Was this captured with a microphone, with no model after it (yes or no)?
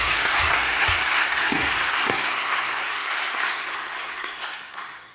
no